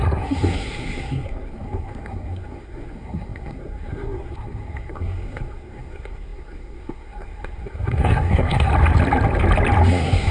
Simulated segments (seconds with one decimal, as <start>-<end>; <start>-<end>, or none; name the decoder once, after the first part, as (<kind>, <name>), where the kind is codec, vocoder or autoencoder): 0.0-8.7 (codec, SNAC); 9.9-10.3